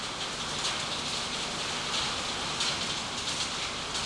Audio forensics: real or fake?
real